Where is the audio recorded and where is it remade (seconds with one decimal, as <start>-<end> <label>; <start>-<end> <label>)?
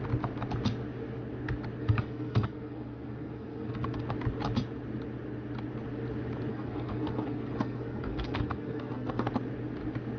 0.0-1.8 recorded; 1.8-4.0 remade; 4.0-6.5 recorded; 6.5-9.3 remade; 9.3-10.2 recorded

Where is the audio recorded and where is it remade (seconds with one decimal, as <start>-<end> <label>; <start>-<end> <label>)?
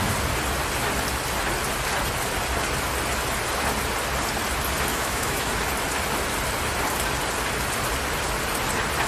0.0-4.9 recorded; 4.9-5.5 remade; 5.5-9.1 recorded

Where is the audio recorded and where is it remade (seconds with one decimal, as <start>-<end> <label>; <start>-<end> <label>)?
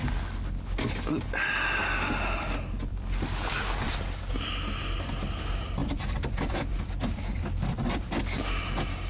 0.0-2.9 recorded; 2.9-3.5 remade; 3.5-5.8 recorded; 5.8-8.2 remade; 8.2-9.1 recorded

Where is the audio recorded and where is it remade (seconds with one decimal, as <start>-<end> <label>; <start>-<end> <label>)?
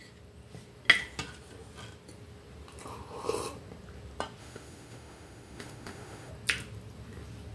0.0-4.4 recorded; 4.4-6.3 remade; 6.3-7.5 recorded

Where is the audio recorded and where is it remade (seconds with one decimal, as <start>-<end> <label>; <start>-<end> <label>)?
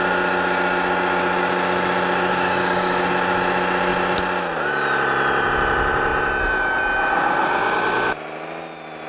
0.0-2.3 recorded; 2.3-3.1 remade; 3.1-9.1 recorded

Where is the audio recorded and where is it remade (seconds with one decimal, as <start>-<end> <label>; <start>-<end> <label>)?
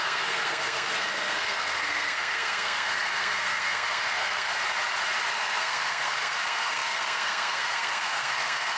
0.0-4.6 remade; 4.6-5.3 recorded; 5.3-8.8 remade